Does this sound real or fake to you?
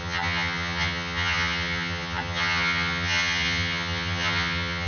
fake